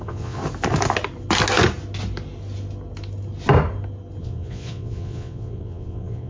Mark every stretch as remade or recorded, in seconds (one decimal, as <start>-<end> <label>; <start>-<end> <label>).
0.0-0.4 remade; 0.4-4.2 recorded; 4.2-6.3 remade